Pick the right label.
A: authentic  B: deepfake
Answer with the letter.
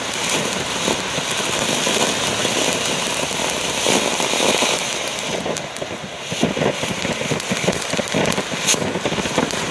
A